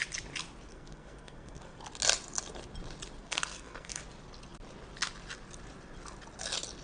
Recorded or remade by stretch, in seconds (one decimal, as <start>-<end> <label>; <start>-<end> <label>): 0.0-0.7 recorded; 0.7-1.8 remade; 1.8-3.2 recorded; 3.2-4.0 remade; 4.0-6.8 recorded

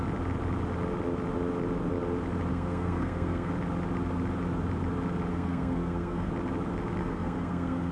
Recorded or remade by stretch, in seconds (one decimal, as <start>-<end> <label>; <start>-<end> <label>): 0.0-2.5 recorded; 2.5-3.5 remade; 3.5-5.3 recorded; 5.3-6.3 remade; 6.3-7.0 recorded; 7.0-7.9 remade

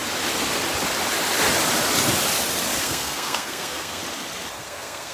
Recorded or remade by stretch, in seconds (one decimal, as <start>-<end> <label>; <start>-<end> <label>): 0.0-2.8 recorded; 2.8-4.0 remade; 4.0-4.6 recorded; 4.6-5.1 remade

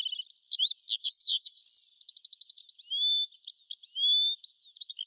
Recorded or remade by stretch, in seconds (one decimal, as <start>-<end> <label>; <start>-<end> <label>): 0.0-1.0 recorded; 1.0-1.6 remade; 1.6-5.1 recorded